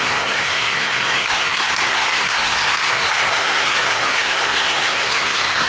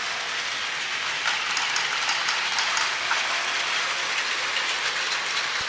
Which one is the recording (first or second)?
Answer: second